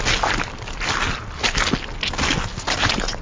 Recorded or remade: recorded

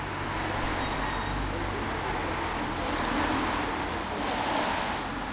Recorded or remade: recorded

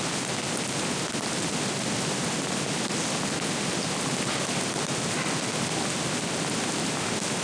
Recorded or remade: recorded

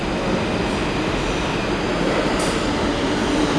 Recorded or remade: recorded